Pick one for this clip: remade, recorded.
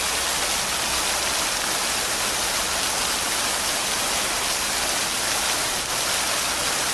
recorded